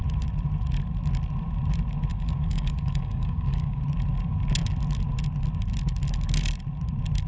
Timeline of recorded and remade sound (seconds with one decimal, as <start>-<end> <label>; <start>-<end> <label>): 0.0-2.1 recorded; 2.1-3.8 remade; 3.8-7.3 recorded